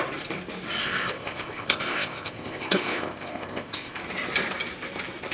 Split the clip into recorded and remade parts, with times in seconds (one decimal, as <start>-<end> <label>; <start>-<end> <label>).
0.0-0.8 recorded; 0.8-4.0 remade; 4.0-5.3 recorded